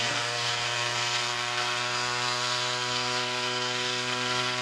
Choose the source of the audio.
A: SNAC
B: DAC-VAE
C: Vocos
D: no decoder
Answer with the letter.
A